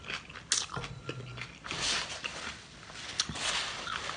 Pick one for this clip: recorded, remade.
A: recorded